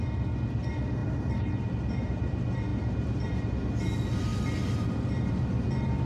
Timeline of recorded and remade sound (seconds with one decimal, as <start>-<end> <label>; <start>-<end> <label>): 0.0-1.0 recorded; 1.0-1.7 remade; 1.7-2.7 recorded; 2.7-3.5 remade; 3.5-6.1 recorded